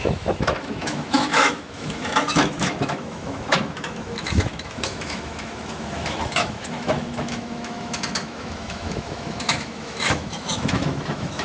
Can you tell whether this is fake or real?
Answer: fake